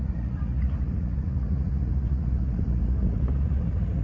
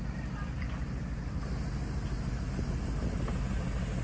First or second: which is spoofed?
first